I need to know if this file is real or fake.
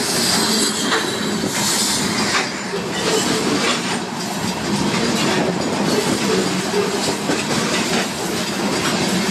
real